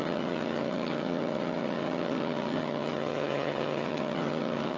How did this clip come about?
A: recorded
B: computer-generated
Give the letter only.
B